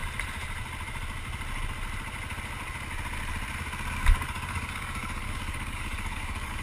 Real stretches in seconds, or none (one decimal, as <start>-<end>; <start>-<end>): 0.0-3.9